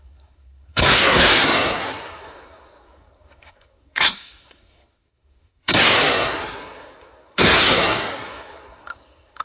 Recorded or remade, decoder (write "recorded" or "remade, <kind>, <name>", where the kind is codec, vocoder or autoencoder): remade, codec, SNAC